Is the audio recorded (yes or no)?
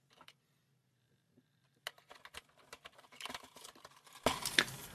yes